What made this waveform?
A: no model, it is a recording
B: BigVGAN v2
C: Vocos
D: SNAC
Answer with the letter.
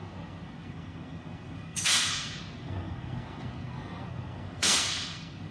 D